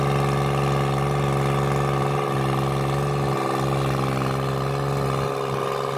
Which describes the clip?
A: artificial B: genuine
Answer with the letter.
B